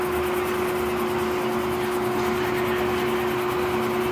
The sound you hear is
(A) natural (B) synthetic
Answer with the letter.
A